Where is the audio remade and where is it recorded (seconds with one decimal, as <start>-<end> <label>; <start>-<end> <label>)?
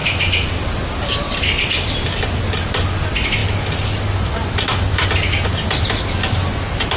0.0-7.0 recorded